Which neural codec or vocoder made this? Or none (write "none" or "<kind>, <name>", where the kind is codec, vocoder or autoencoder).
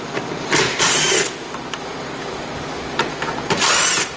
none